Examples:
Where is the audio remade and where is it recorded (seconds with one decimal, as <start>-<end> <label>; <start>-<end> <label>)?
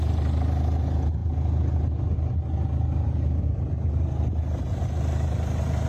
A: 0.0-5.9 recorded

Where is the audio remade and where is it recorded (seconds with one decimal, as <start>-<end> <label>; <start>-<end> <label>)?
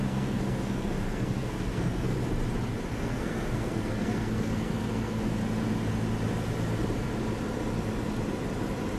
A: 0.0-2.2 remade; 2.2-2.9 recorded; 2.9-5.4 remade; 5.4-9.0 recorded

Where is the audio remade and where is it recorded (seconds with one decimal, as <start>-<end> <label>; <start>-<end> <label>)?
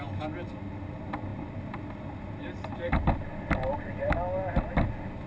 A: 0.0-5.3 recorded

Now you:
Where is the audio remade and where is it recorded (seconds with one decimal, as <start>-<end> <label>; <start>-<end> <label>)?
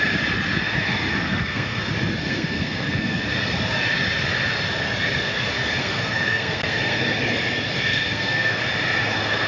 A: 0.0-1.3 recorded; 1.3-1.8 remade; 1.8-2.2 recorded; 2.2-3.2 remade; 3.2-5.8 recorded; 5.8-7.0 remade; 7.0-7.9 recorded; 7.9-8.6 remade; 8.6-9.5 recorded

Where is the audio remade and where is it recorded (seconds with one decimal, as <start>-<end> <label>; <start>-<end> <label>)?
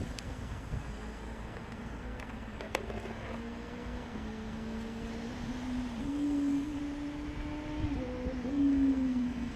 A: 0.0-5.1 remade; 5.1-6.0 recorded; 6.0-6.8 remade; 6.8-8.5 recorded; 8.5-9.6 remade